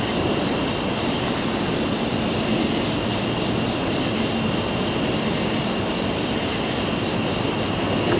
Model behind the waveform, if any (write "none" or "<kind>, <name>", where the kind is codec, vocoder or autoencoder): none